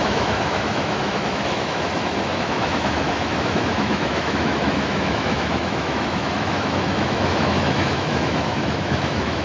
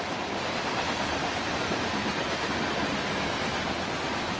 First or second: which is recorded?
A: second